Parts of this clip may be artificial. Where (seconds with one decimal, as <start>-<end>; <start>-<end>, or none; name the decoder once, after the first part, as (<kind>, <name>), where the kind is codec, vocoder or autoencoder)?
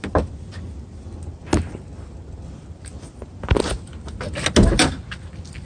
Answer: none